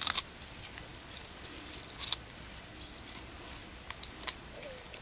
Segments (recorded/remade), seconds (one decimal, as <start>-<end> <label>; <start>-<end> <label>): 0.0-5.0 recorded

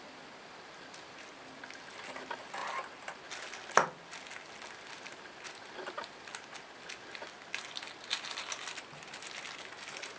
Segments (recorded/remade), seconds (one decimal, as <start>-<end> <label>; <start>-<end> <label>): 0.0-10.2 recorded